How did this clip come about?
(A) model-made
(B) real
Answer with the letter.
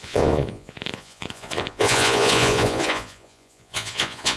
A